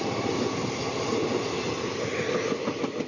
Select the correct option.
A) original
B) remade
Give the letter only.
A